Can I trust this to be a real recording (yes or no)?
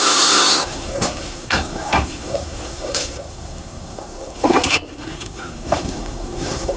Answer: no